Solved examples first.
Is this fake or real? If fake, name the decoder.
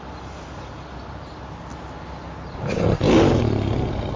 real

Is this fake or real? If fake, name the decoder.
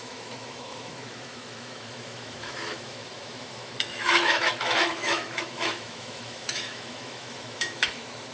fake, autoencoder, DAC-VAE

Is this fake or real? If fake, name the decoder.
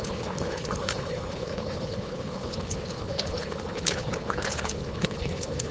fake, codec, HILCodec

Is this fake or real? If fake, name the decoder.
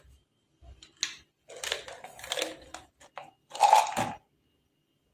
real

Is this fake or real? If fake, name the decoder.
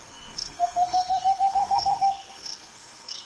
fake, codec, SNAC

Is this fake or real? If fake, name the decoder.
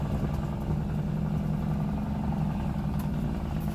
real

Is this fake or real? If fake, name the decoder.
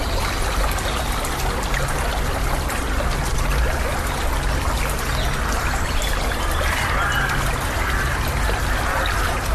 real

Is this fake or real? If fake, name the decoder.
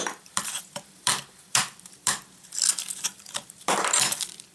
fake, vocoder, BigVGAN v2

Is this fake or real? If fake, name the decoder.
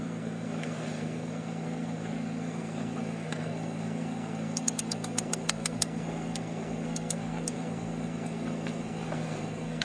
fake, codec, SNAC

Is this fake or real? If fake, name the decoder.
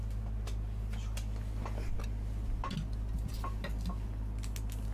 real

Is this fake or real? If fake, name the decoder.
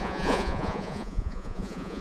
fake, vocoder, Vocos